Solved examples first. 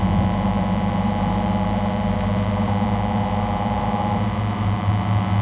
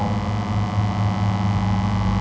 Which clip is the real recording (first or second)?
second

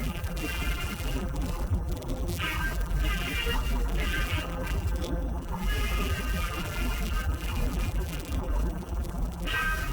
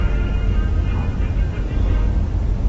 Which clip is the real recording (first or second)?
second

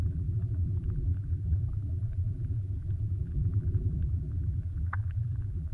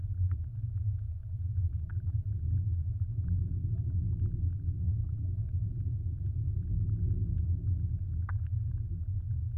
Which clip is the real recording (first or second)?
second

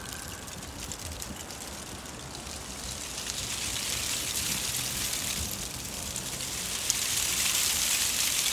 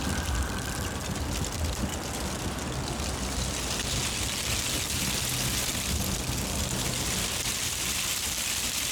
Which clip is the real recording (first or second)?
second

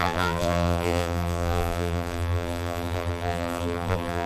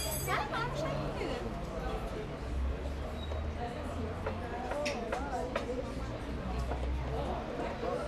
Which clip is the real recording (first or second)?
second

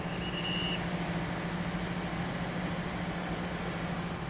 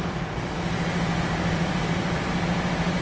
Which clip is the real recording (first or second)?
first